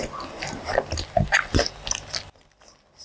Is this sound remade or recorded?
recorded